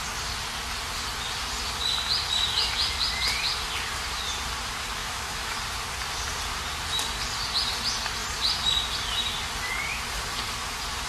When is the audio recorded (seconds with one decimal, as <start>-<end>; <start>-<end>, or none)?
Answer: 0.0-5.0; 5.6-11.1